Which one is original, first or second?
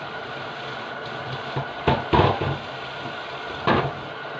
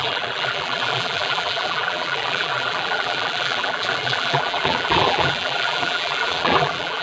first